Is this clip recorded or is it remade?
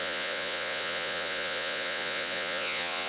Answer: remade